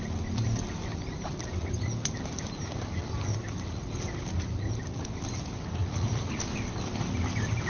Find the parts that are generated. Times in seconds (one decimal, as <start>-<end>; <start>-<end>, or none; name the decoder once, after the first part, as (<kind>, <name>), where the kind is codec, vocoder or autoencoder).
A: 3.3-3.9 (vocoder, Vocos); 5.8-6.4

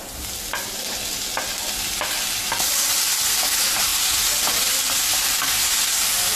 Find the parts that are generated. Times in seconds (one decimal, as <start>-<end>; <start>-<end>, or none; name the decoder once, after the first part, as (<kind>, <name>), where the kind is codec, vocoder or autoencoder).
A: none

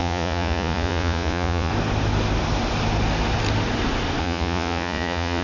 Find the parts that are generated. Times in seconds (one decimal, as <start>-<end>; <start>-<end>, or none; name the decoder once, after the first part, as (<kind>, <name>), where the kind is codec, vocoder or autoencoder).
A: 0.0-1.7 (vocoder, Vocos); 4.2-5.4

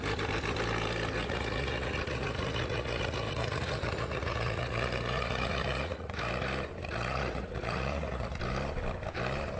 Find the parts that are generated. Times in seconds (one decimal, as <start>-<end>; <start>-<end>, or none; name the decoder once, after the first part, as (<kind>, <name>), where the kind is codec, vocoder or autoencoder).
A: 1.2-6.3 (vocoder, Vocos); 6.8-8.4